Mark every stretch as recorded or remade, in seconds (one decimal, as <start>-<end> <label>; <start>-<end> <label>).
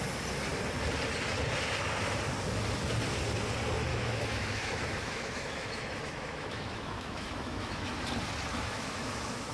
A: 0.0-3.9 recorded; 3.9-8.0 remade; 8.0-8.5 recorded; 8.5-9.5 remade